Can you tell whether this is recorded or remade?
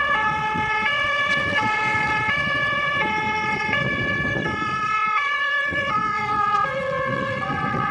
remade